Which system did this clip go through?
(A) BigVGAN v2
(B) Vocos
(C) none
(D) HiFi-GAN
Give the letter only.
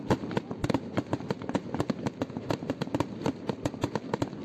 C